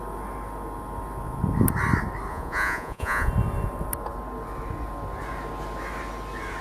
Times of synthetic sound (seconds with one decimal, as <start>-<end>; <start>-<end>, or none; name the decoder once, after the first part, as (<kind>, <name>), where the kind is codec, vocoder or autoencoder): 2.3-3.3 (vocoder, Vocos)